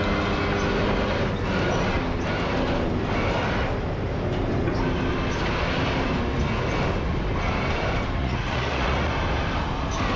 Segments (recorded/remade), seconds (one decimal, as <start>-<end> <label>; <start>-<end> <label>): 0.0-8.2 recorded; 8.2-9.1 remade; 9.1-10.2 recorded